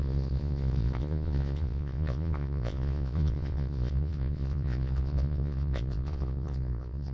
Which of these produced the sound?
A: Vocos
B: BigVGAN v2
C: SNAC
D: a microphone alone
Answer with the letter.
A